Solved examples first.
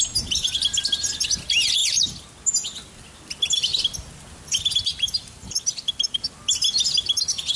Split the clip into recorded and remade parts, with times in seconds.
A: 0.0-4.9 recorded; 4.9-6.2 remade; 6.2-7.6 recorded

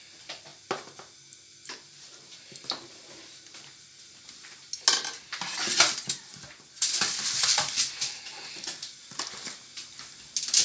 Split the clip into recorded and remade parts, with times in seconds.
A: 0.0-10.6 recorded